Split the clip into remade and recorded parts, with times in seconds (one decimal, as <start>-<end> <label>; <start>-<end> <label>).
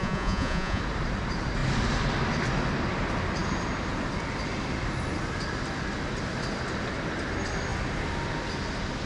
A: 0.0-0.8 remade; 0.8-9.1 recorded